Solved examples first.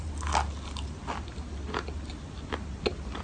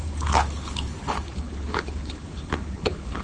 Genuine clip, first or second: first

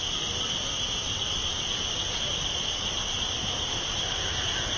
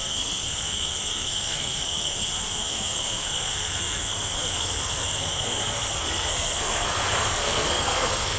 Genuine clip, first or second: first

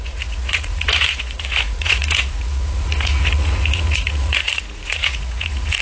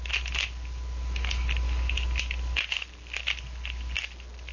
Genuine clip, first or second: second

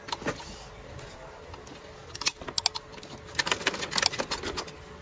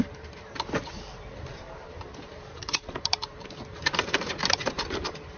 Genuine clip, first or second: first